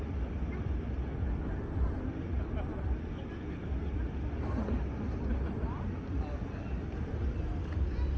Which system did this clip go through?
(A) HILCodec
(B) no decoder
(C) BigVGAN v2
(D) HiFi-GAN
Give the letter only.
B